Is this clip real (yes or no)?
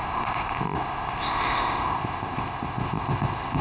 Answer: no